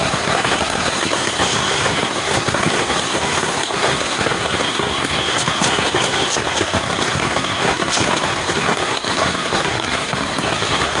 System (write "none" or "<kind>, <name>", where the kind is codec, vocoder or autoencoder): codec, SNAC